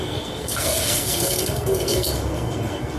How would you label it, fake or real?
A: fake